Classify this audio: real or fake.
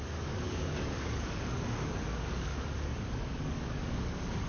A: fake